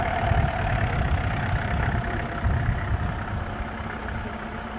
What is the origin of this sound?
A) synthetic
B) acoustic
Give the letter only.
B